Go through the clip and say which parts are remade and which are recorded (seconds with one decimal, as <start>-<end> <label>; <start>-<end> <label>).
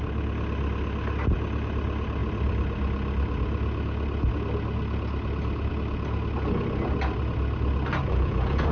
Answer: 0.0-8.0 recorded; 8.0-8.7 remade